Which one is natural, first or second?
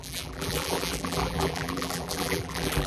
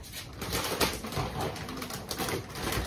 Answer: second